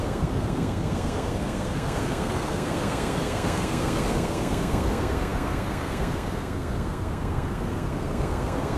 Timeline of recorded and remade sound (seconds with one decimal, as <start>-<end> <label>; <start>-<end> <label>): 0.0-8.8 remade